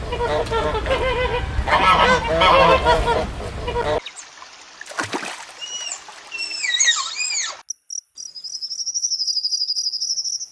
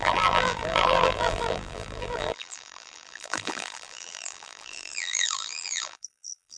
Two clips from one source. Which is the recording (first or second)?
first